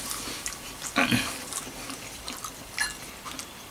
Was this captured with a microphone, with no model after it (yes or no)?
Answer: yes